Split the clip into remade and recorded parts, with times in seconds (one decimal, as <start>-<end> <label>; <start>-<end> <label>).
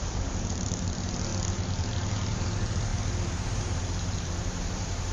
0.0-1.3 remade; 1.3-1.9 recorded; 1.9-5.1 remade